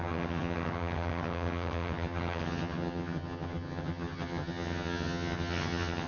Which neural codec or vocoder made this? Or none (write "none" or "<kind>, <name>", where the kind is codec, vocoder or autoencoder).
vocoder, HiFi-GAN